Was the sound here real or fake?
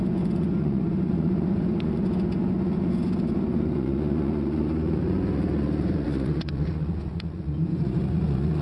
fake